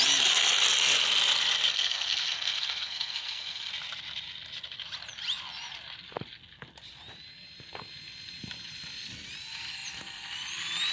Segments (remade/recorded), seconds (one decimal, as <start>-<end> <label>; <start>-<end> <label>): 0.0-1.7 recorded; 1.7-3.7 remade; 3.7-10.9 recorded